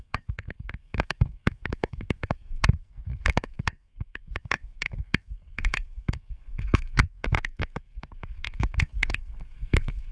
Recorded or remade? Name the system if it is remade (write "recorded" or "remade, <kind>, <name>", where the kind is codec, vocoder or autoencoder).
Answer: remade, codec, SNAC